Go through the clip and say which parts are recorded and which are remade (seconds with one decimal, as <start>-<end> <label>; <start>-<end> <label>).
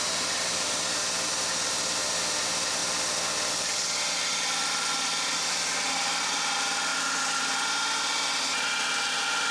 0.0-9.5 recorded